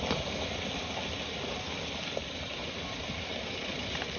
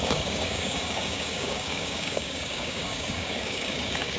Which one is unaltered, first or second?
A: first